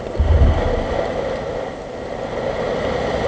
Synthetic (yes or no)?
no